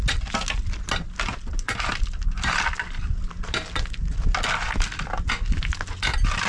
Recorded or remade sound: recorded